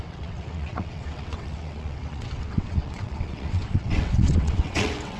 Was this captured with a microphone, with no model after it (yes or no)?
no